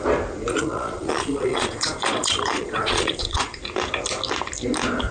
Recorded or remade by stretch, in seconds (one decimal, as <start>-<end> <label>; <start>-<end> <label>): 0.0-0.5 recorded; 0.5-3.6 remade; 3.6-5.1 recorded

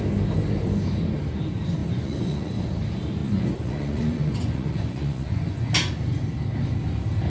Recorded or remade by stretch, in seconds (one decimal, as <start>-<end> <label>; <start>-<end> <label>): 0.0-1.8 recorded; 1.8-2.6 remade; 2.6-3.2 recorded; 3.2-5.7 remade; 5.7-7.3 recorded